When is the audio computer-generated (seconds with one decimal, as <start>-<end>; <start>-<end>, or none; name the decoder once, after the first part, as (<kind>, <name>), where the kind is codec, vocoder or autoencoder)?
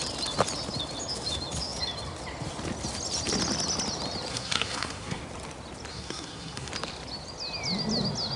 4.3-5.2 (codec, SNAC); 5.9-6.7